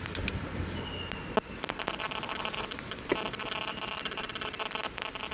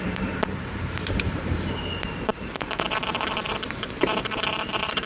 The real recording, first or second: first